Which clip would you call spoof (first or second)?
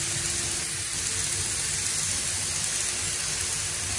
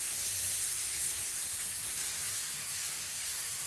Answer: second